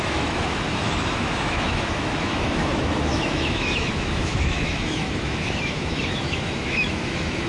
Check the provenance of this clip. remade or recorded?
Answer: remade